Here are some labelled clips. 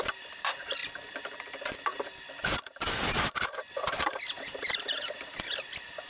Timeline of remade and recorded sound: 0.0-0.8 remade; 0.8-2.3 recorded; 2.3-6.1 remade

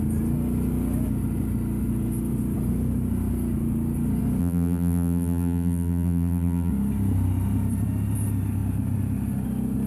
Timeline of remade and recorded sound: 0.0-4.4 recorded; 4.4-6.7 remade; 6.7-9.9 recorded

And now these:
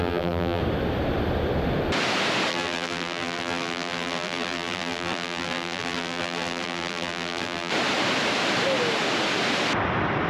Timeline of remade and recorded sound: 0.0-0.6 remade; 0.6-2.5 recorded; 2.5-7.7 remade; 7.7-10.3 recorded